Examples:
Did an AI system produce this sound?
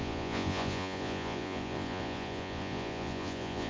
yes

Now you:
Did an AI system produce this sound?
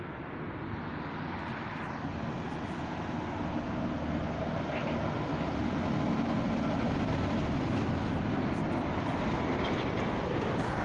no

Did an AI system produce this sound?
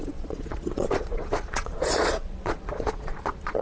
yes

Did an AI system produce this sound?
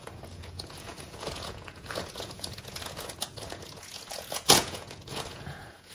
yes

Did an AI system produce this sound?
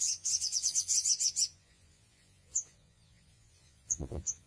yes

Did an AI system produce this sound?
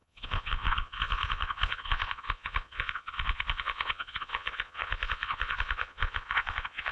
yes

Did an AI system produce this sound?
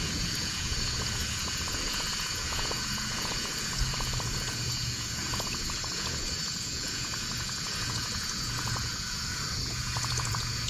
yes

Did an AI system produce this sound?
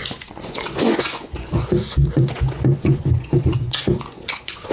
yes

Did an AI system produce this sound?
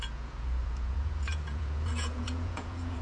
yes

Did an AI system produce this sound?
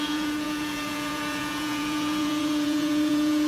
yes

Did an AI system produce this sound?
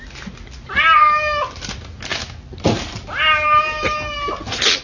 no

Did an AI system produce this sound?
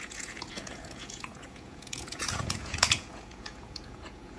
yes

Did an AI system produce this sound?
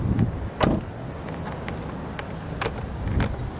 no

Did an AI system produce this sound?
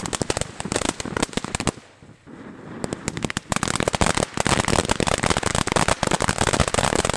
no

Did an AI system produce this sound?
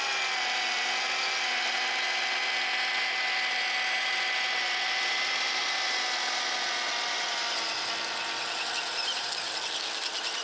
no